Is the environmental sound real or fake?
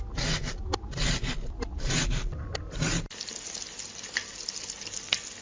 real